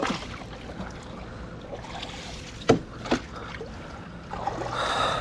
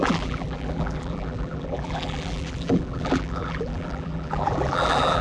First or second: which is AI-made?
second